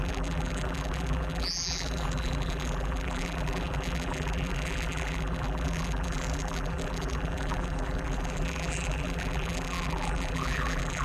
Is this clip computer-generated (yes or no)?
yes